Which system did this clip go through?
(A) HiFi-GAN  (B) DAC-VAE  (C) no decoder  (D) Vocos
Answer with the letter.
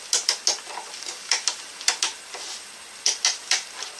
C